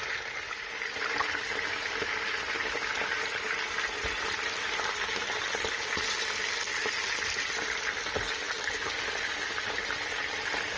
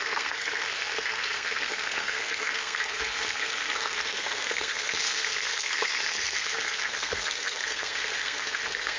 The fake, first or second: second